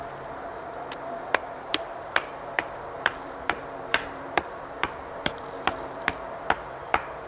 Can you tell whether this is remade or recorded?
remade